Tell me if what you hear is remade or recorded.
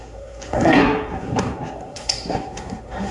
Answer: remade